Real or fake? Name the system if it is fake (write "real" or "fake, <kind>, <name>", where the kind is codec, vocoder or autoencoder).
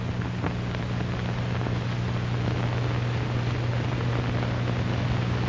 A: real